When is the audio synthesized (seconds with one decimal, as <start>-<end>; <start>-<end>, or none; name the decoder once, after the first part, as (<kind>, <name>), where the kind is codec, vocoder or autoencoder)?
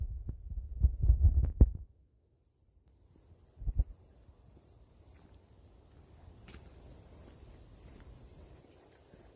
1.3-2.4 (autoencoder, DAC-VAE)